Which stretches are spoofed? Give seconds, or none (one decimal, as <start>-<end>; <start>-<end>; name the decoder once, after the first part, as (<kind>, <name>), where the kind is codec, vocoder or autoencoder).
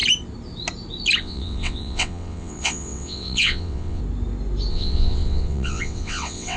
1.2-4.0 (vocoder, WaveNeXt); 4.7-6.6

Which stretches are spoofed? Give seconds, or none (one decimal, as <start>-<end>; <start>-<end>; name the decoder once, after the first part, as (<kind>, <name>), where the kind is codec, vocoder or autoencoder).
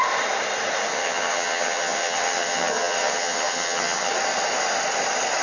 0.9-4.1 (vocoder, HiFi-GAN)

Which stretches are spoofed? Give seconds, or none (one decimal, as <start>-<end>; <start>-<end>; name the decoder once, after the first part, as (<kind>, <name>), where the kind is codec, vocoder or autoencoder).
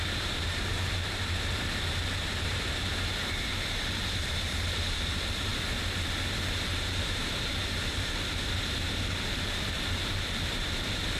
0.0-5.5 (vocoder, BigVGAN v2); 6.7-11.2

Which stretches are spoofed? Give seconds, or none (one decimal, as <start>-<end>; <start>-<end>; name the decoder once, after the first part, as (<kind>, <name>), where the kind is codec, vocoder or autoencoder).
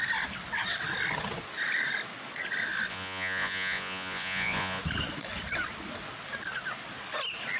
2.9-4.8 (vocoder, Vocos)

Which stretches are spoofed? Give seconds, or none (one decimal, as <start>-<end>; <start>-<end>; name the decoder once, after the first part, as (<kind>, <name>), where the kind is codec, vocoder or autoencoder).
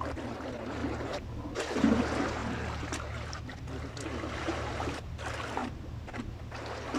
0.0-0.8 (vocoder, BigVGAN v2); 1.6-2.4; 4.3-5.6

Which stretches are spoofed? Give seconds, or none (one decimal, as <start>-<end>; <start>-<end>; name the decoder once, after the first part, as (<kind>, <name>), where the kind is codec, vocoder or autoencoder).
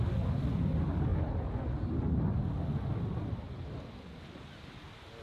none